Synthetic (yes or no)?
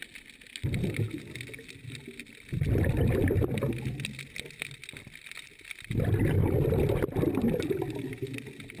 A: no